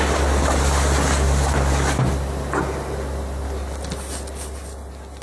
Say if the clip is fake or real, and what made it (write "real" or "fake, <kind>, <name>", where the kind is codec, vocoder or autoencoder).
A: real